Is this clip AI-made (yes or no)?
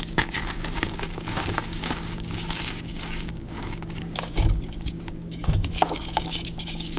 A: yes